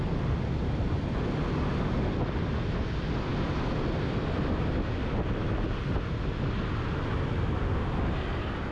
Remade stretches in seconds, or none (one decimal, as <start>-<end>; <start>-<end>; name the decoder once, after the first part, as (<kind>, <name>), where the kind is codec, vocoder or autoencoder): none